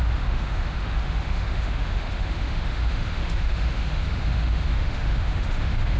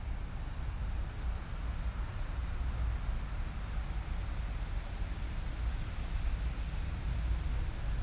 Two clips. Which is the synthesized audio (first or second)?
first